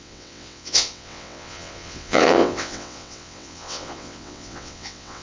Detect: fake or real fake